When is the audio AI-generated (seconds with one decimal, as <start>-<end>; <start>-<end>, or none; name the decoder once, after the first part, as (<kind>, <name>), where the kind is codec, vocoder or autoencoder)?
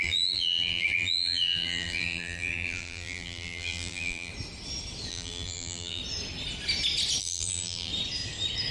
0.0-4.3 (vocoder, BigVGAN v2); 5.1-6.0; 7.2-7.9